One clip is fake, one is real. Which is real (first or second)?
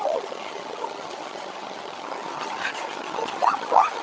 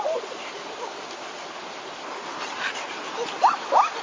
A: second